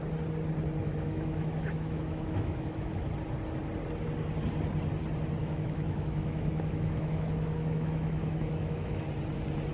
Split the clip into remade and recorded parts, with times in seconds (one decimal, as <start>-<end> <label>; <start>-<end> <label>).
0.0-0.8 recorded; 0.8-3.1 remade; 3.1-5.4 recorded; 5.4-9.0 remade; 9.0-9.7 recorded